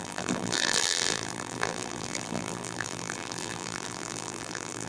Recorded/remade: remade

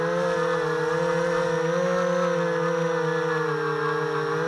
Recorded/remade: recorded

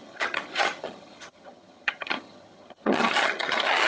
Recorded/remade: remade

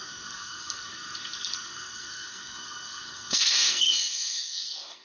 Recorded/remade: remade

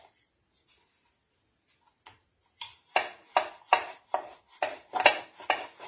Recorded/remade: recorded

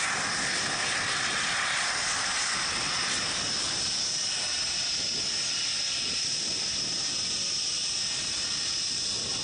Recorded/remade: recorded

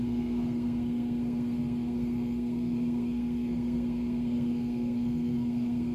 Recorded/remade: remade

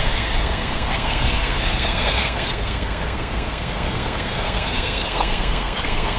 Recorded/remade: remade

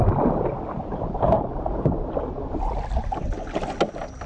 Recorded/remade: recorded